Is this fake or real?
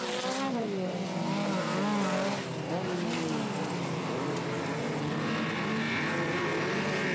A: real